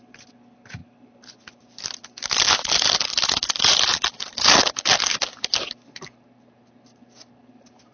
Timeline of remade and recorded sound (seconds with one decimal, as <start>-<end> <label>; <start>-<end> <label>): 0.0-7.9 recorded